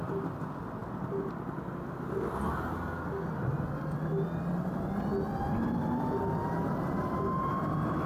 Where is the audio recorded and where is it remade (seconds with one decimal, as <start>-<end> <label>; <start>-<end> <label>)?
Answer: 0.0-8.1 recorded